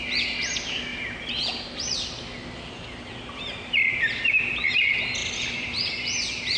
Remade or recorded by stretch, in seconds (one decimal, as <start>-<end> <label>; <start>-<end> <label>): 0.0-0.9 recorded; 0.9-1.5 remade; 1.5-5.2 recorded; 5.2-5.9 remade; 5.9-6.6 recorded